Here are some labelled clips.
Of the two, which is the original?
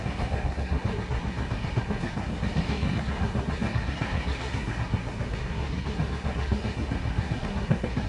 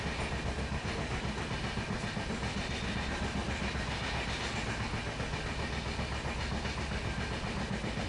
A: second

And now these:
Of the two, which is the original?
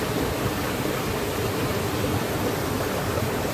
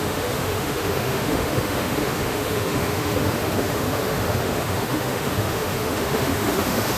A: first